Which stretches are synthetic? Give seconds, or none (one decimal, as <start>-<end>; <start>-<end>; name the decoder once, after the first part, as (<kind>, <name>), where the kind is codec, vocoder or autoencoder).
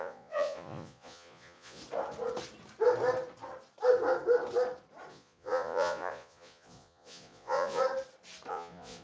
0.0-1.8 (vocoder, Vocos); 5.1-7.8; 8.5-9.0